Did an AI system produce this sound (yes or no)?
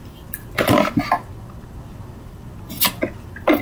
no